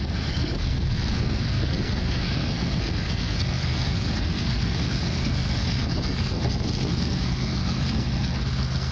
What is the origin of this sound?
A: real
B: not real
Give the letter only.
B